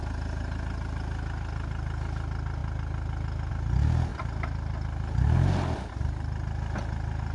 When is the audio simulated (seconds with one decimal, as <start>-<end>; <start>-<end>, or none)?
none